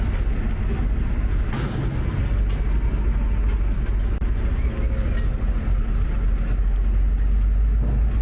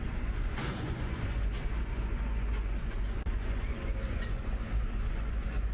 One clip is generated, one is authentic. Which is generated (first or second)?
second